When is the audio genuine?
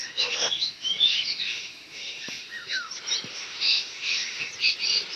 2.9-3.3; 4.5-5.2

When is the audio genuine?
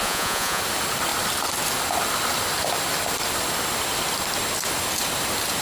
0.6-5.6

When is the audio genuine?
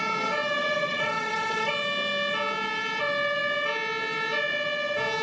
0.0-0.6; 1.7-5.2